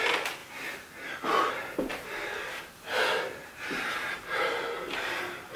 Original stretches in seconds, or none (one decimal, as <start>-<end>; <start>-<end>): 0.0-3.4; 5.1-5.6